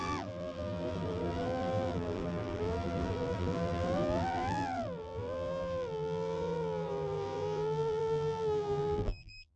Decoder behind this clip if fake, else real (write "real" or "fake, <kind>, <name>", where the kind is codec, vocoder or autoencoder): fake, vocoder, BigVGAN v2